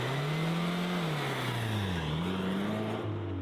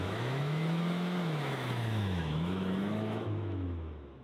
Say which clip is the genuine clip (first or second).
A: first